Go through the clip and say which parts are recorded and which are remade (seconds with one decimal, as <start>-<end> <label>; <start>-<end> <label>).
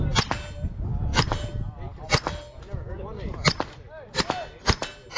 0.0-5.2 recorded